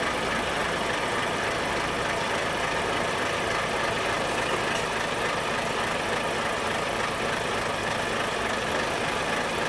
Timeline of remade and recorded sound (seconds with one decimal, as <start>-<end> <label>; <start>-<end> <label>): 0.0-9.7 recorded